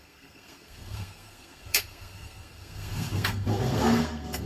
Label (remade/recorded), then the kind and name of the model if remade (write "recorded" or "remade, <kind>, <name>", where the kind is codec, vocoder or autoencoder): remade, codec, SNAC